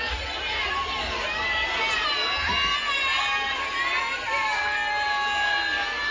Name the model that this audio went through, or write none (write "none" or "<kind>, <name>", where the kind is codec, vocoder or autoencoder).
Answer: none